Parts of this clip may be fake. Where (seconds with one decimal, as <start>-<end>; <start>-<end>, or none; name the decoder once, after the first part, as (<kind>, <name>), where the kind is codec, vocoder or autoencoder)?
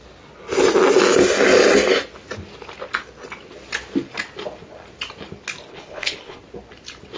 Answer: 5.7-6.4 (codec, HILCodec)